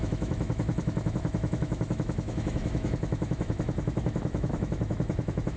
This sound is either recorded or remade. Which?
remade